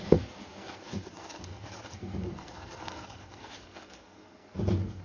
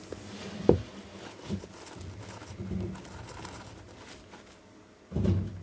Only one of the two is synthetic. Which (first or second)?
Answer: first